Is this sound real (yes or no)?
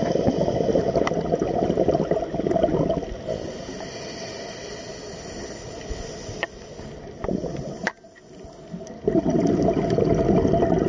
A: yes